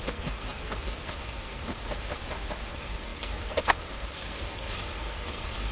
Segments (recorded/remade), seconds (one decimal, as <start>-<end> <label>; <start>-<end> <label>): 0.0-2.2 remade; 2.2-2.7 recorded; 2.7-5.7 remade